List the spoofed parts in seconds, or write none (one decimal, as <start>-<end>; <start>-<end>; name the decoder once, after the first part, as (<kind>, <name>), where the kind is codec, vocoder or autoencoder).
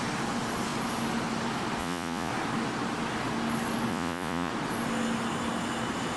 1.8-2.3 (vocoder, Vocos); 3.9-4.5